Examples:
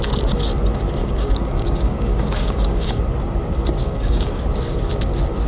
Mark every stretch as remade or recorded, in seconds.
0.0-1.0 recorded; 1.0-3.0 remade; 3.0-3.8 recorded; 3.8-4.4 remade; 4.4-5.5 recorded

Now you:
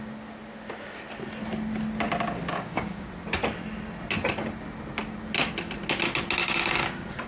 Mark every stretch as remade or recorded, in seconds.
0.0-2.5 recorded; 2.5-3.1 remade; 3.1-6.4 recorded; 6.4-7.3 remade